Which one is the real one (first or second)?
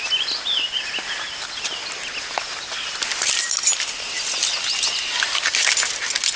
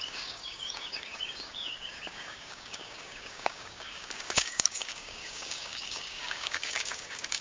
first